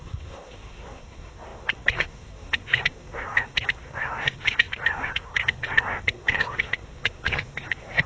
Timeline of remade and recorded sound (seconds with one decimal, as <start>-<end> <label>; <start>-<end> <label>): 0.0-8.1 remade